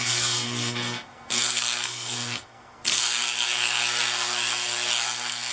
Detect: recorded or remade remade